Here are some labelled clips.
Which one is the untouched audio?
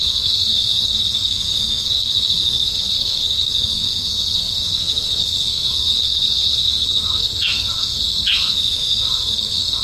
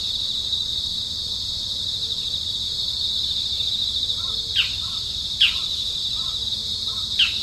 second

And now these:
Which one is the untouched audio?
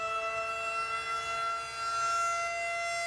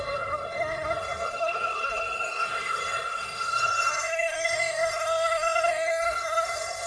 first